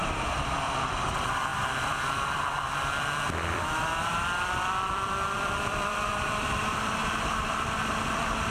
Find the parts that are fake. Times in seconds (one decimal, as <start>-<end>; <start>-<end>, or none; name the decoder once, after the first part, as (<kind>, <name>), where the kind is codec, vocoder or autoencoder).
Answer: 0.0-8.5 (vocoder, BigVGAN v2)

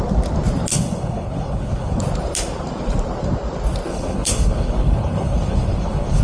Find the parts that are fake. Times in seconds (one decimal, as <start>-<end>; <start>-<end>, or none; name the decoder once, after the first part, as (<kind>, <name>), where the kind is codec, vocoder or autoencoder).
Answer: 0.7-2.0 (codec, HILCodec); 3.9-6.2

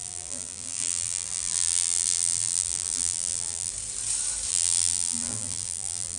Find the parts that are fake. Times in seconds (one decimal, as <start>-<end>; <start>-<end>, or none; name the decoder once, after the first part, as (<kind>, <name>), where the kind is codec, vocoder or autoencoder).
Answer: 0.0-3.7 (vocoder, BigVGAN v2); 4.5-6.2

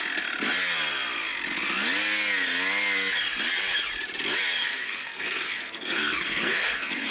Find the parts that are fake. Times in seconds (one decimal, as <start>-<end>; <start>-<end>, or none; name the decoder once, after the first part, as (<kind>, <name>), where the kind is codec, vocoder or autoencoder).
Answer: 4.6-7.1 (codec, SNAC)